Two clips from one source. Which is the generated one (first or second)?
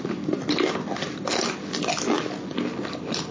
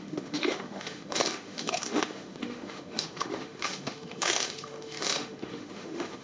second